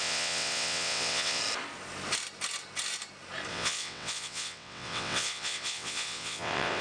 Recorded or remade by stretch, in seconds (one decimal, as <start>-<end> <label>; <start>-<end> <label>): 0.0-1.4 remade; 1.4-3.5 recorded; 3.5-6.8 remade